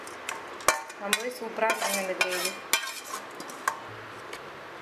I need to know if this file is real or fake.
real